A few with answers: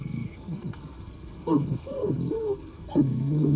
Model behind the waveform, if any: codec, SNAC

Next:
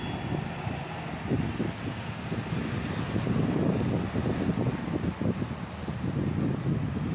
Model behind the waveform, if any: none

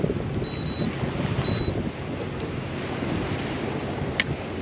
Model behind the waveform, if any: none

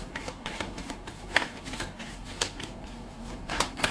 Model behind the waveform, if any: codec, SNAC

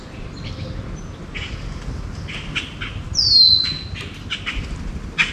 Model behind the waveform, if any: none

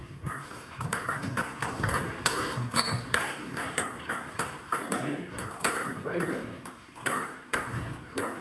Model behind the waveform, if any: codec, SNAC